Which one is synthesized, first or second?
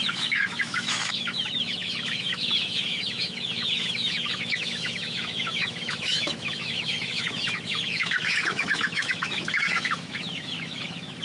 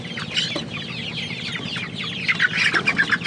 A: first